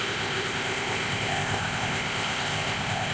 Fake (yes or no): yes